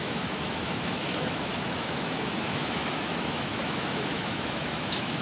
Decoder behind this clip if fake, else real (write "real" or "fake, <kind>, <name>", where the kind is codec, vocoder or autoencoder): fake, autoencoder, DAC-VAE